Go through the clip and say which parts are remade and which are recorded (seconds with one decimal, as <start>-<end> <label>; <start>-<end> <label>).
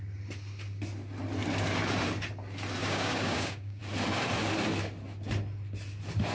0.0-2.8 recorded; 2.8-3.8 remade; 3.8-6.3 recorded